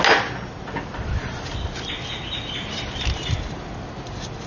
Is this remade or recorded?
recorded